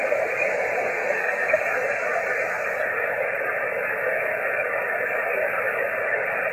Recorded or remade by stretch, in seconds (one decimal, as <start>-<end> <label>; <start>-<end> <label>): 0.0-0.9 recorded; 0.9-1.6 remade; 1.6-6.5 recorded